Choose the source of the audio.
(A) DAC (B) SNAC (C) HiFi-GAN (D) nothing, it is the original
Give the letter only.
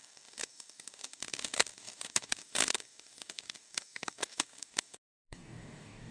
A